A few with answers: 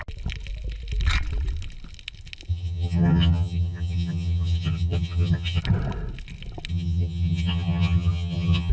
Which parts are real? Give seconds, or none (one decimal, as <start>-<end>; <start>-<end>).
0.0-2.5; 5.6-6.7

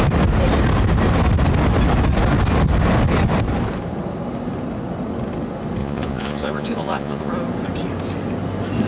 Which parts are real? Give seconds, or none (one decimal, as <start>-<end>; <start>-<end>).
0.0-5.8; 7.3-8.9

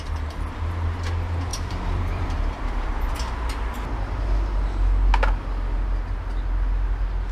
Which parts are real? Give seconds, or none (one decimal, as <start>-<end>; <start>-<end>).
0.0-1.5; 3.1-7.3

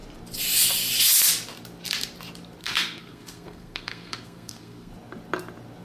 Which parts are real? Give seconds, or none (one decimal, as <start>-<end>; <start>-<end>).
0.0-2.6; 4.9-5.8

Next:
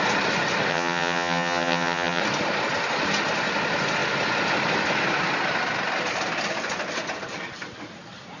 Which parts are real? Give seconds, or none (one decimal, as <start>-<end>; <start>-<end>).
0.0-0.7; 2.2-8.4

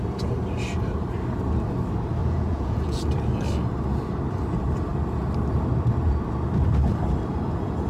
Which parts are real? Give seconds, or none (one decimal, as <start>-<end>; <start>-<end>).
0.0-2.2; 3.0-7.9